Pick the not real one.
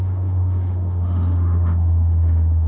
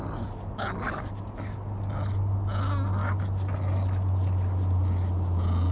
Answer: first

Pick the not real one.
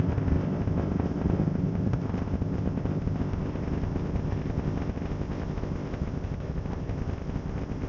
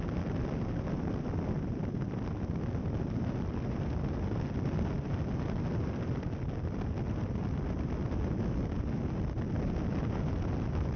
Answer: first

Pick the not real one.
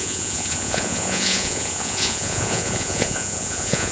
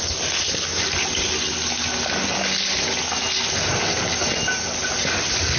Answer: first